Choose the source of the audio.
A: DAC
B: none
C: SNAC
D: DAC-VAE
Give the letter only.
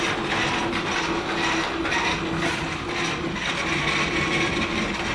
B